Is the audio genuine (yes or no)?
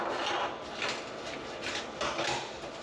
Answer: yes